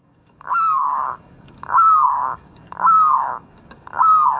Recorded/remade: remade